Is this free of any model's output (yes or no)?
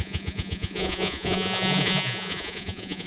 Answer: no